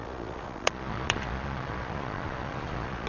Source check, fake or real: fake